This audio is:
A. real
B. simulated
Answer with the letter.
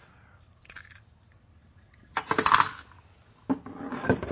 A